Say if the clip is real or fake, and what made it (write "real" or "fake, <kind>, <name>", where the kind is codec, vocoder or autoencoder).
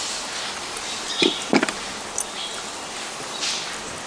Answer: real